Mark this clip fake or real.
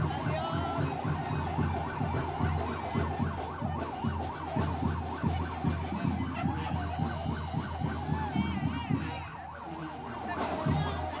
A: real